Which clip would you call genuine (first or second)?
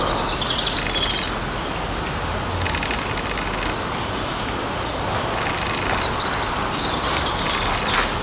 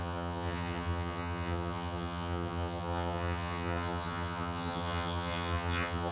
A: first